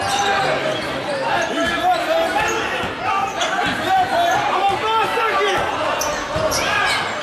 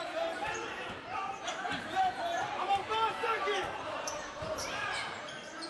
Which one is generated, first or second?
second